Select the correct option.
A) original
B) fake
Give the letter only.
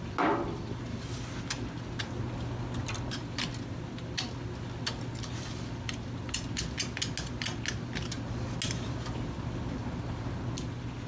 A